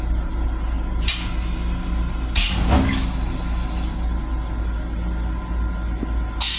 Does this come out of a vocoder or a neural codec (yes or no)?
no